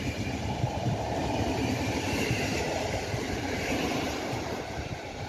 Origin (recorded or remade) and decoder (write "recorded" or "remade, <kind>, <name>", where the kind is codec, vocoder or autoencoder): remade, vocoder, BigVGAN v2